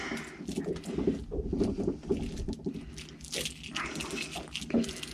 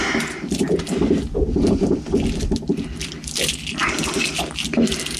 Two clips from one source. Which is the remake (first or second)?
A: second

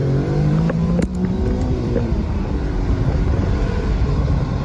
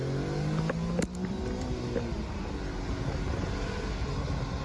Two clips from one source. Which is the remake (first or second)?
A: first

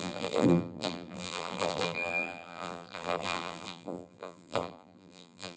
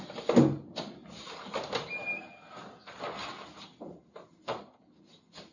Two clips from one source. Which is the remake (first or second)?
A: first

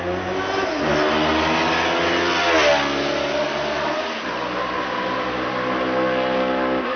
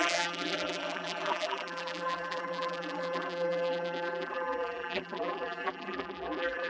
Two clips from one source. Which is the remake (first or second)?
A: second